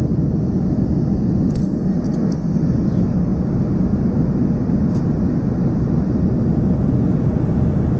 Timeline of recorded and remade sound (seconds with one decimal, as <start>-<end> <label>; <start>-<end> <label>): 0.0-8.0 recorded